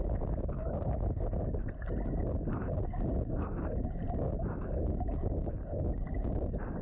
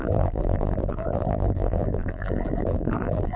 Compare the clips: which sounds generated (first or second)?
second